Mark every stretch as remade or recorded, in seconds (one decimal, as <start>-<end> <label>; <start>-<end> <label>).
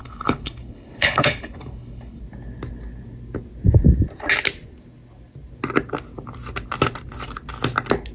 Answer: 0.0-2.2 remade; 2.2-8.1 recorded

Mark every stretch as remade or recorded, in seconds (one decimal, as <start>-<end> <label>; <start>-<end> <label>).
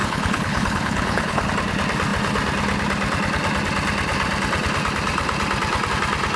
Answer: 0.0-1.5 remade; 1.5-6.4 recorded